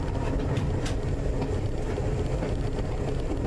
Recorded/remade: recorded